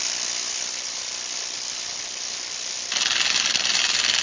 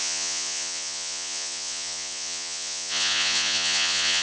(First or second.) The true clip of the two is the first